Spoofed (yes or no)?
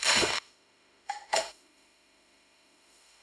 yes